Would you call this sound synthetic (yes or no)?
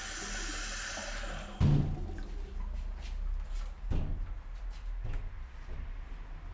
no